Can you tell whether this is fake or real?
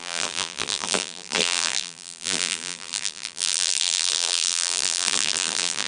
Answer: fake